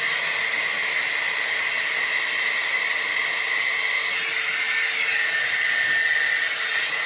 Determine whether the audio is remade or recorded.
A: recorded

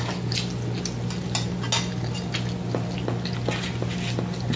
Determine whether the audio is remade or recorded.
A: recorded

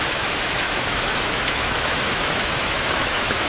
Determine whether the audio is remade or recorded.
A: remade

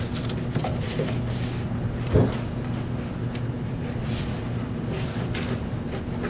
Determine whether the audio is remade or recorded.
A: recorded